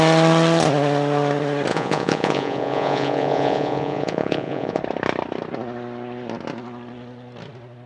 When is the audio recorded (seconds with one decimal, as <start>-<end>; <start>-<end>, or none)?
0.0-1.7; 4.8-7.9